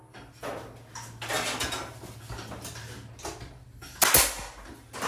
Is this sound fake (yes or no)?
no